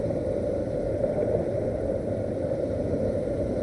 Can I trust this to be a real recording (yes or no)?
yes